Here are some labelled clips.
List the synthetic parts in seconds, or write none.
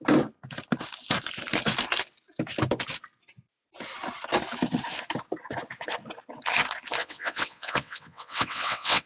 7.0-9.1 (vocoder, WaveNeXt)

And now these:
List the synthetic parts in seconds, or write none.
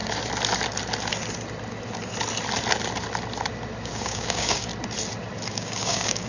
3.8-4.7 (codec, DAC); 5.5-6.3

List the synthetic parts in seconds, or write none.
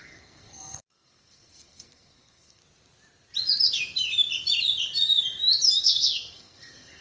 0.0-2.6 (codec, SNAC); 5.8-7.0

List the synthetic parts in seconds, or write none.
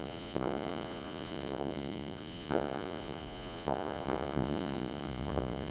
0.0-5.7 (vocoder, Vocos)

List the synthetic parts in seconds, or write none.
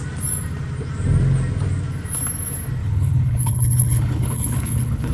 2.8-5.1 (codec, HILCodec)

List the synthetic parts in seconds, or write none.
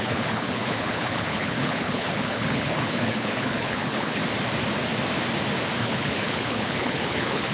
0.0-4.2 (codec, HILCodec); 5.8-7.5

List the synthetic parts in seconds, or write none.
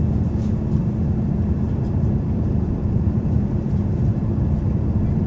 0.8-4.0 (vocoder, BigVGAN v2)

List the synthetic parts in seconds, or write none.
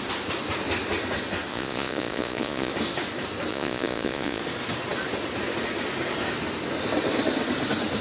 1.5-2.7 (vocoder, Vocos); 3.5-4.4